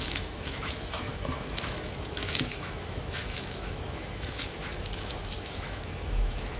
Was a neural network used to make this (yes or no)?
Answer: yes